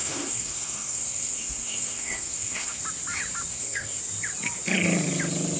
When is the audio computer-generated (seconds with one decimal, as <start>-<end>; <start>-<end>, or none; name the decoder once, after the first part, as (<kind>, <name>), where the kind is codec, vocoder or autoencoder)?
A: 0.0-2.8 (codec, SNAC); 3.5-4.0